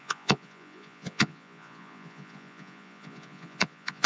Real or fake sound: fake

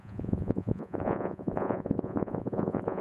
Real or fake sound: fake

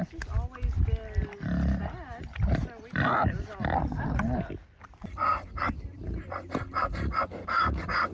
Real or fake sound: real